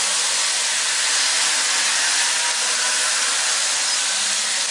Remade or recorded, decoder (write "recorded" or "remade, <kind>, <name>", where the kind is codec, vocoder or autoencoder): recorded